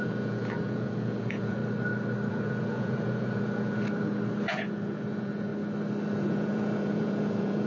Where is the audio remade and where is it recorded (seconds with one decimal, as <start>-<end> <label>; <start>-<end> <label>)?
0.0-1.6 remade; 1.6-2.3 recorded; 2.3-3.8 remade; 3.8-4.5 recorded; 4.5-5.5 remade; 5.5-6.1 recorded; 6.1-7.7 remade

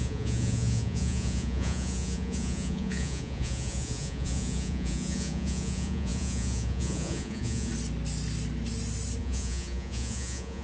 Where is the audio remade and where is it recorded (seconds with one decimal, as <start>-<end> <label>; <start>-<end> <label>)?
0.0-7.7 remade; 7.7-9.2 recorded; 9.2-10.6 remade

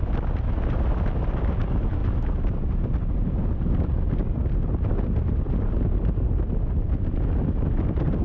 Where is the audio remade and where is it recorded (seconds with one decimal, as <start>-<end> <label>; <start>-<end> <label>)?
0.0-8.2 recorded

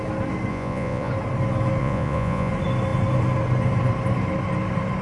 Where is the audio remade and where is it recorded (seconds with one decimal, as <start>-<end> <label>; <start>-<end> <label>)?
0.0-0.5 recorded; 0.5-1.1 remade; 1.1-1.8 recorded; 1.8-2.5 remade; 2.5-5.0 recorded

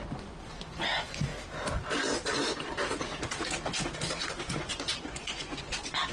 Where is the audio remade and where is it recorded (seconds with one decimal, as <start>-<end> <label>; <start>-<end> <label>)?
0.0-1.3 remade; 1.3-4.3 recorded; 4.3-6.1 remade

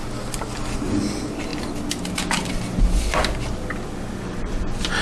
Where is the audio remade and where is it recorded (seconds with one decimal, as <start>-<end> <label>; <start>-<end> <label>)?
0.0-5.0 recorded